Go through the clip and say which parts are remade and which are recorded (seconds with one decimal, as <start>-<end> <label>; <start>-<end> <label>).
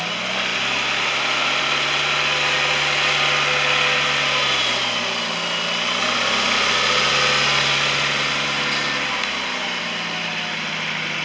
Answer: 0.0-11.2 recorded